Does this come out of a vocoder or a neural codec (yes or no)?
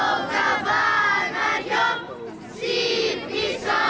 no